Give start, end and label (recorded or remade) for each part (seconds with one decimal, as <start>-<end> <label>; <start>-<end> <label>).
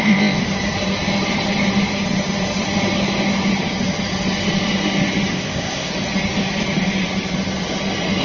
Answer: 0.0-0.4 remade; 0.4-5.3 recorded; 5.3-5.9 remade; 5.9-8.2 recorded